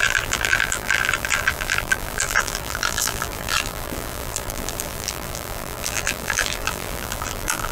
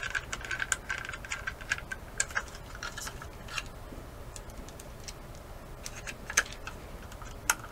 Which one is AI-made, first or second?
first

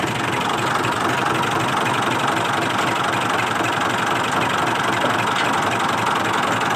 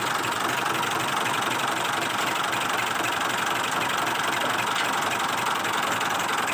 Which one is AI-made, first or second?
second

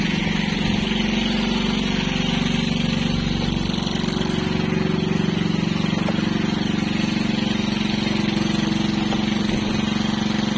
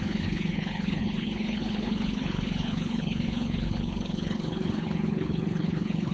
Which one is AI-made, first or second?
second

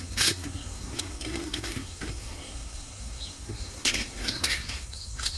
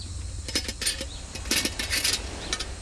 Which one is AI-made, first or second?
first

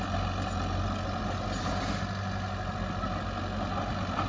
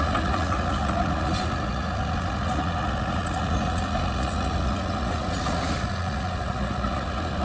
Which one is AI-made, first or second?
second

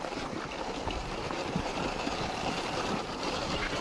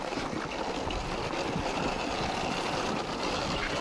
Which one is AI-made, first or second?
first